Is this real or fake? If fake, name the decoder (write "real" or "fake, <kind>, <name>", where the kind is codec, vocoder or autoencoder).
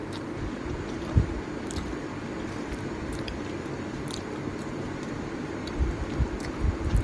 fake, vocoder, BigVGAN v2